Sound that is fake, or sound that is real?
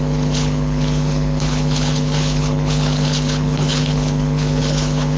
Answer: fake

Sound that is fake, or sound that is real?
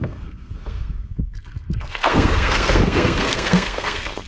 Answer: fake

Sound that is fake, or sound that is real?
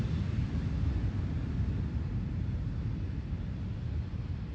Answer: real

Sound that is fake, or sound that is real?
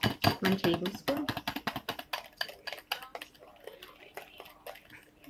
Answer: real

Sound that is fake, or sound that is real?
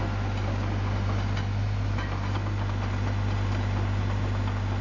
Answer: real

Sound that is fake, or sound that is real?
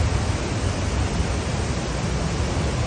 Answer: real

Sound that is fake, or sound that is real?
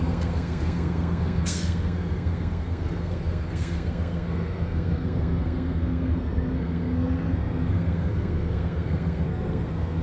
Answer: fake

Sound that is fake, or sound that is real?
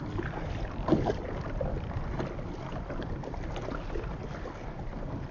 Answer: real